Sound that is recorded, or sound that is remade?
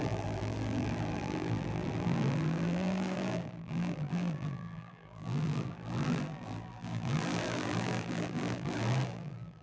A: remade